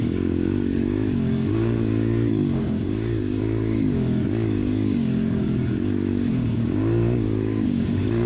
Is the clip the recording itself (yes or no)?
no